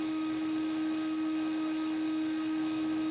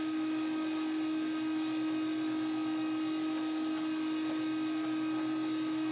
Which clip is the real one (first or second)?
second